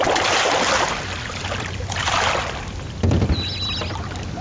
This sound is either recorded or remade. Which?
recorded